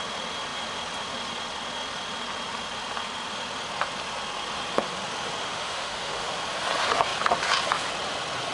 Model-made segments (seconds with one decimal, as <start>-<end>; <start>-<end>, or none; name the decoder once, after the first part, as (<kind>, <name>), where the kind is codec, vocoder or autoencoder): 5.4-6.4 (autoencoder, DAC-VAE)